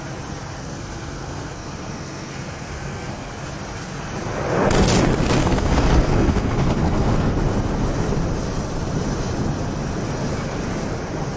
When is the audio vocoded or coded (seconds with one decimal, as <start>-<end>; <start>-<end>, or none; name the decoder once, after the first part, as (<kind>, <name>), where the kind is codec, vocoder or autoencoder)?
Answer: 0.6-3.3 (codec, SNAC); 5.4-7.3